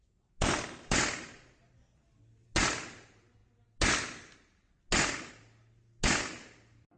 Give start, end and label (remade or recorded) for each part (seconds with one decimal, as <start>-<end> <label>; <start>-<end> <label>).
0.0-7.0 recorded